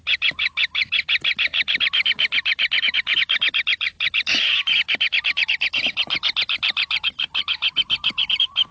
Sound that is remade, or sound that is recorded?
remade